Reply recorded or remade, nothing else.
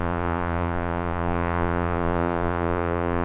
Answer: remade